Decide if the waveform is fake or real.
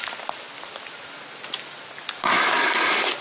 real